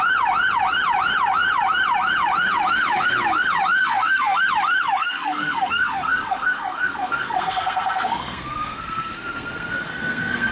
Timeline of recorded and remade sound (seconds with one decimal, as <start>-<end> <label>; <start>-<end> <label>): 0.0-3.8 recorded; 3.8-4.4 remade; 4.4-5.0 recorded; 5.0-10.5 remade